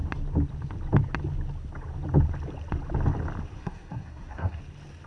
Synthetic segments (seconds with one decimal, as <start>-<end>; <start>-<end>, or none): 3.6-4.6